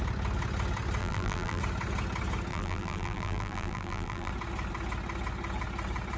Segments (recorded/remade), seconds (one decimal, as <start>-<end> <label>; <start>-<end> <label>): 0.0-1.0 recorded; 1.0-1.6 remade; 1.6-2.5 recorded; 2.5-4.3 remade; 4.3-6.2 recorded